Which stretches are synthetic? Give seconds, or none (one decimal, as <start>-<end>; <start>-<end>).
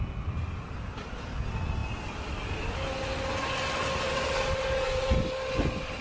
none